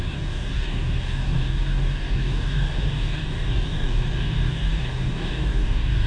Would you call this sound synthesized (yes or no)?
yes